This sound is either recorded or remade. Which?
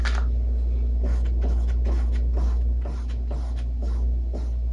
recorded